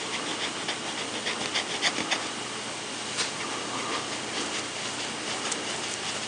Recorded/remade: recorded